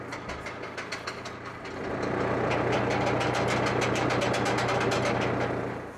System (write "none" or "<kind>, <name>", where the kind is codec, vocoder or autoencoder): none